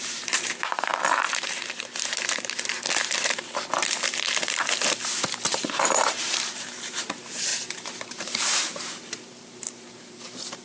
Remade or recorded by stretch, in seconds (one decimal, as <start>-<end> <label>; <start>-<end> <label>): 0.0-0.9 remade; 0.9-5.6 recorded; 5.6-10.6 remade